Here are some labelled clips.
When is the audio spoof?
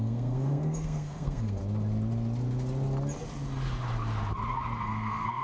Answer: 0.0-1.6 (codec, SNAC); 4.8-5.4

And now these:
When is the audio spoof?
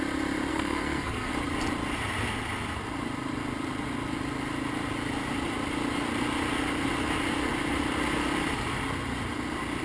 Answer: 0.5-1.3 (codec, SNAC)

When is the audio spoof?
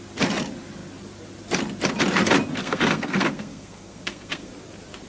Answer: 2.6-4.5 (codec, SNAC)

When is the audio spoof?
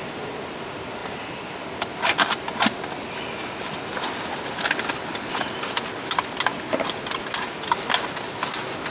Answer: none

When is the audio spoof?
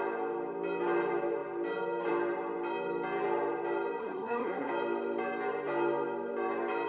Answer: 4.0-4.7 (codec, SNAC)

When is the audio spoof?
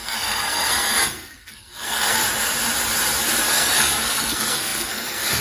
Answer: 0.0-2.2 (codec, SNAC); 3.4-5.4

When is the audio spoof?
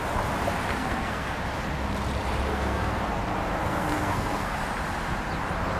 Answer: 0.7-1.4 (codec, SNAC); 2.5-3.0; 3.6-4.6